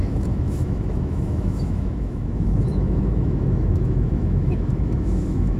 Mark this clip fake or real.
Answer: fake